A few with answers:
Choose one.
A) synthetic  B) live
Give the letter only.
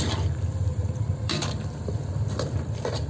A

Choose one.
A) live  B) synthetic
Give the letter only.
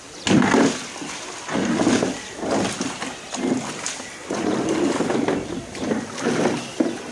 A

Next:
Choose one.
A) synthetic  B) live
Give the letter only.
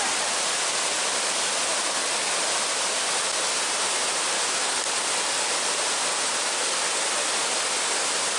B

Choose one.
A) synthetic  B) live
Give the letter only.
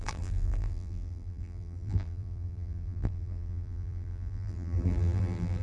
A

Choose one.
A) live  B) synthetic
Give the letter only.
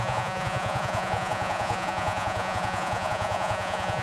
B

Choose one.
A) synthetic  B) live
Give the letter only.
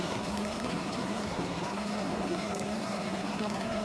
A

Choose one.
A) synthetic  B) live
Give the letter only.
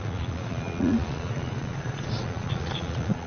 A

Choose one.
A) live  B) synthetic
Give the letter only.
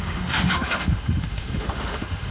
B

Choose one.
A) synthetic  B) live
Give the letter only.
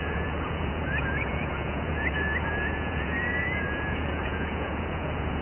A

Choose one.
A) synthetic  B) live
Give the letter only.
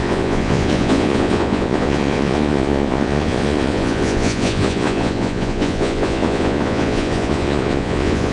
A